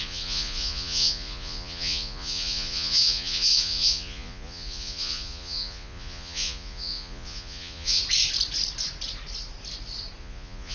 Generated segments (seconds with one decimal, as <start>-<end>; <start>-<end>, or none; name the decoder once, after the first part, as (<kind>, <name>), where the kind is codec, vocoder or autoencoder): 0.0-8.0 (vocoder, Vocos); 10.2-10.7